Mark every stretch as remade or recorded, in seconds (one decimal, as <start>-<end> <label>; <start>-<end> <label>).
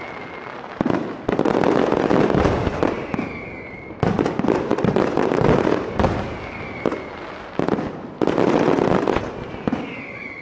0.0-4.7 recorded; 4.7-5.9 remade; 5.9-10.4 recorded